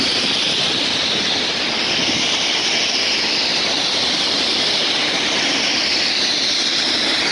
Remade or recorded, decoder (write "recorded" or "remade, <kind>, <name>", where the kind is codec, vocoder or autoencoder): recorded